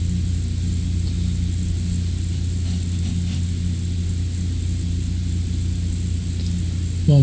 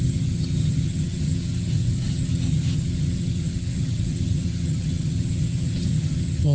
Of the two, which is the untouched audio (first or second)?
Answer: first